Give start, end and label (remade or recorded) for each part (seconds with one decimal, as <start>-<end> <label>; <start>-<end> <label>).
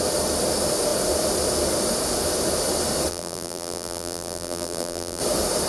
0.0-3.1 recorded; 3.1-5.2 remade; 5.2-5.7 recorded